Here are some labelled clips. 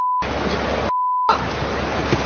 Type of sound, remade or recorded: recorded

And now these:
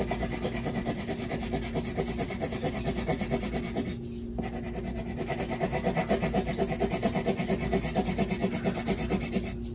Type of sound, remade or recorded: recorded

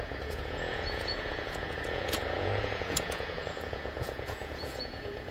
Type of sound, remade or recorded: remade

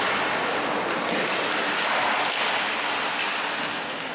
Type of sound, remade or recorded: recorded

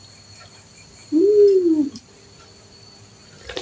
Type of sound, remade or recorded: recorded